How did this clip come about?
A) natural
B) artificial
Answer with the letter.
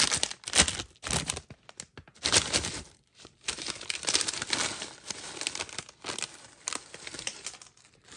A